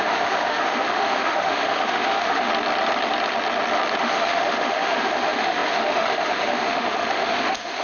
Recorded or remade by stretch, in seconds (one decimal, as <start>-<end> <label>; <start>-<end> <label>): 0.0-2.5 remade; 2.5-4.0 recorded; 4.0-7.8 remade